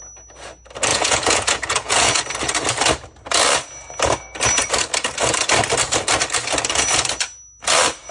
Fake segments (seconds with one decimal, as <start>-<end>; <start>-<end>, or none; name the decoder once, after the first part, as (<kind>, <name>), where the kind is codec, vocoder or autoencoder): 0.9-2.2 (vocoder, Vocos)